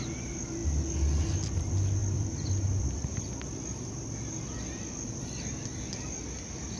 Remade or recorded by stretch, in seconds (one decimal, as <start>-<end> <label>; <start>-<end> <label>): 0.0-2.0 recorded; 2.0-2.8 remade; 2.8-6.8 recorded